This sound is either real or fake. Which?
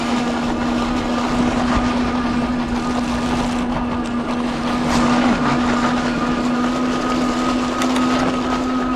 real